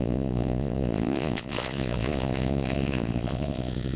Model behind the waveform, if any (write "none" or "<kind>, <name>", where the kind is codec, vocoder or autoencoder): vocoder, Vocos